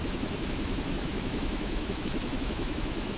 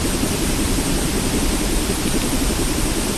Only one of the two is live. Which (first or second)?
second